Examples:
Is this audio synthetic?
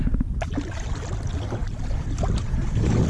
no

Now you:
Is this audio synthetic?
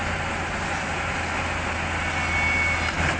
no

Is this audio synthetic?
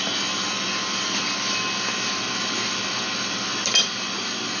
no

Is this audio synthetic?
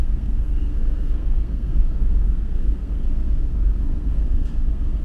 yes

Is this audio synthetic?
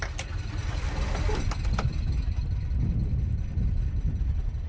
no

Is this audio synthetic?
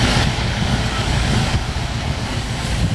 yes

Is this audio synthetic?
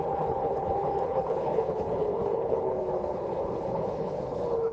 yes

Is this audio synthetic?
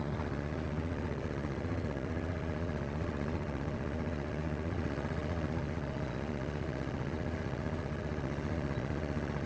yes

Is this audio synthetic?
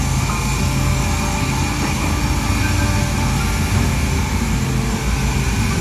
no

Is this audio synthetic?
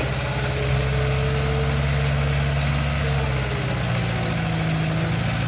no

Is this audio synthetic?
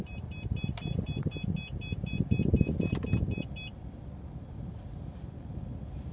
no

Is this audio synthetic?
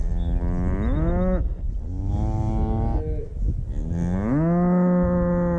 no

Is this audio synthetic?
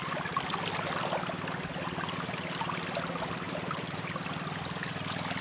no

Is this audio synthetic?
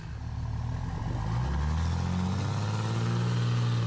no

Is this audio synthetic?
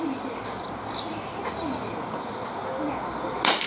no